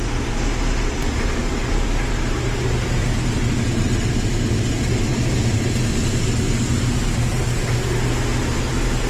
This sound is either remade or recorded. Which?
recorded